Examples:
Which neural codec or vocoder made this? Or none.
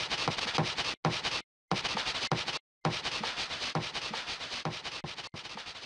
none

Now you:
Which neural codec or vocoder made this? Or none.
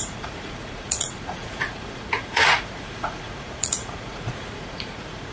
vocoder, Vocos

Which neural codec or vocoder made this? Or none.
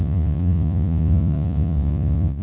vocoder, Vocos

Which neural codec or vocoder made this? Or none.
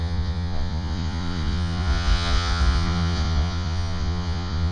vocoder, Vocos